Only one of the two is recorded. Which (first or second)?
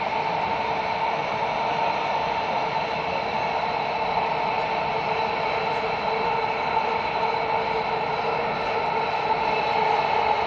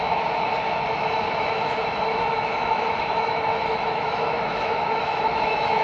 first